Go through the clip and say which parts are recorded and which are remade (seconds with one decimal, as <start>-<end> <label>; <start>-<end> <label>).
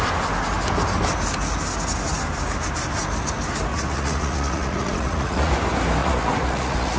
0.0-3.7 recorded; 3.7-5.5 remade; 5.5-6.0 recorded; 6.0-7.0 remade